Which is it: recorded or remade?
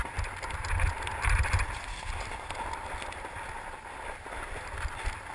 recorded